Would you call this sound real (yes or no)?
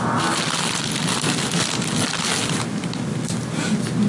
yes